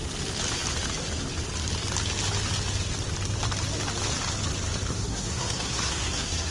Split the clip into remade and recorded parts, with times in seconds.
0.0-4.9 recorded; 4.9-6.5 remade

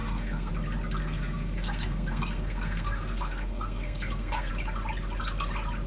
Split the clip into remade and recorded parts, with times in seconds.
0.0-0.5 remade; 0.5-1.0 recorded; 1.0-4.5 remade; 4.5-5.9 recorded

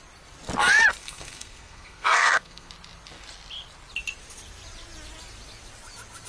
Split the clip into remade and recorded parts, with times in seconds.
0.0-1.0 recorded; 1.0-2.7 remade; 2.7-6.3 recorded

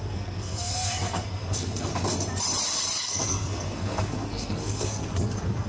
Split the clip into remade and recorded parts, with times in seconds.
0.0-1.9 remade; 1.9-3.0 recorded; 3.0-5.7 remade

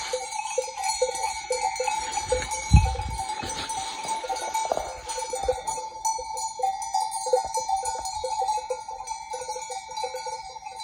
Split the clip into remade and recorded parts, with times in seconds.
0.0-10.8 recorded